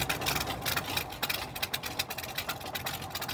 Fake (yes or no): no